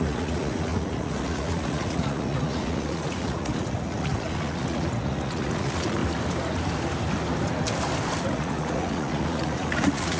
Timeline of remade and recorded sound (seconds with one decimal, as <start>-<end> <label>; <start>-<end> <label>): 0.0-6.0 remade; 6.0-8.2 recorded; 8.2-10.2 remade